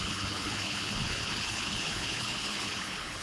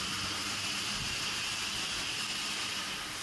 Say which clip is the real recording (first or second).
second